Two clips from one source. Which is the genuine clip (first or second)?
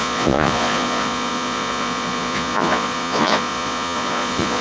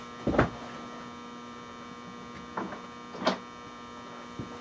second